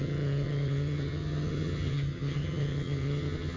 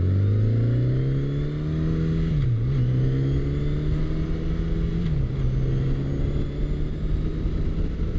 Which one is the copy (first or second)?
first